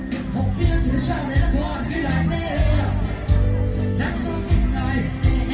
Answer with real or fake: real